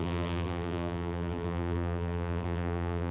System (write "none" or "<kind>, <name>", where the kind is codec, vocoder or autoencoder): vocoder, BigVGAN v2